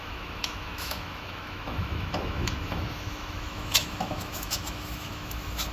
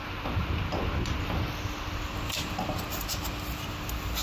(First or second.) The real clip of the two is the second